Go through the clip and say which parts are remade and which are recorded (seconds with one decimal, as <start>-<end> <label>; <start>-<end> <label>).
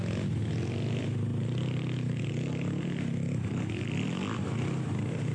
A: 0.0-5.3 recorded